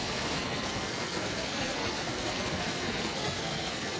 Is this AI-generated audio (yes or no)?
yes